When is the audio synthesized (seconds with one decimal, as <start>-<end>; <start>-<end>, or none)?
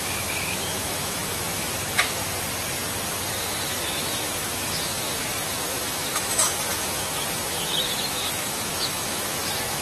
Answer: 0.0-2.2; 3.4-9.8